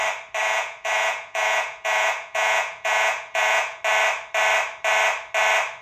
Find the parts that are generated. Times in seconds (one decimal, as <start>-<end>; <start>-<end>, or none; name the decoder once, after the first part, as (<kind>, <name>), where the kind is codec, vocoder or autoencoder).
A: 0.4-3.8 (vocoder, Vocos)

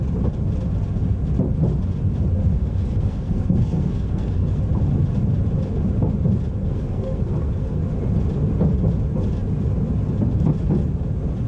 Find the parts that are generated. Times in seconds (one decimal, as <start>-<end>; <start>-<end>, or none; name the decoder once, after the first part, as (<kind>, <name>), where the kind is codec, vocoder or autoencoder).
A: 2.6-4.6 (codec, SNAC); 6.6-7.8

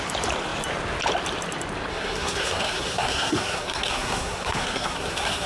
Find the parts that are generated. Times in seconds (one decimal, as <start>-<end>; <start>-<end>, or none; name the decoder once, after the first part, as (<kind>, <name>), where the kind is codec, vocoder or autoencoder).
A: 1.9-5.5 (codec, SNAC)

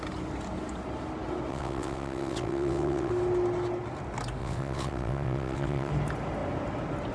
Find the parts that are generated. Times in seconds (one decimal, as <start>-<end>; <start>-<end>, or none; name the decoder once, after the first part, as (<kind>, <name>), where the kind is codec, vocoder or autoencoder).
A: 1.5-3.1 (vocoder, WaveNeXt); 4.4-5.9

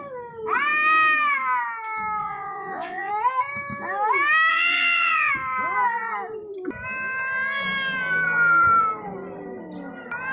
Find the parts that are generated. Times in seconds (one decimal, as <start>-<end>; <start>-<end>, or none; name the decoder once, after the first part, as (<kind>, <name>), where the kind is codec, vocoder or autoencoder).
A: 2.2-3.1 (vocoder, Vocos); 4.5-5.3

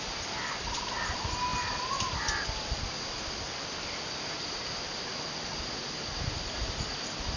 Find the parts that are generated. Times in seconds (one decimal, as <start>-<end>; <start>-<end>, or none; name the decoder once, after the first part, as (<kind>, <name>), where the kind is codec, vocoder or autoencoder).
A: none

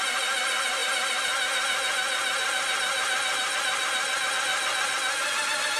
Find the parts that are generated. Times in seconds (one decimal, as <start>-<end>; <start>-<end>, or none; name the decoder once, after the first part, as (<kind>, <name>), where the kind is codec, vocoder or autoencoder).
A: none

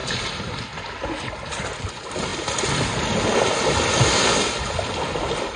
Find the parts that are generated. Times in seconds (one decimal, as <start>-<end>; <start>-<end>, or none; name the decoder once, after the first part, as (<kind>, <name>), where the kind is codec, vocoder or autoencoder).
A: none